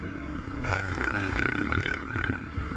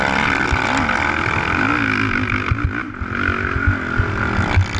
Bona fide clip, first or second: second